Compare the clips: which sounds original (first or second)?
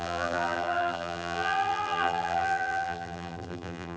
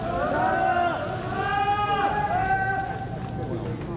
second